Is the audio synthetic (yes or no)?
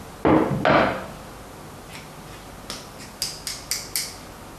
no